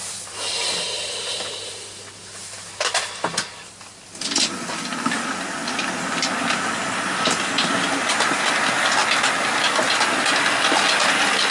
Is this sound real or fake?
real